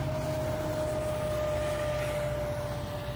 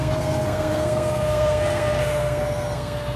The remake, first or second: second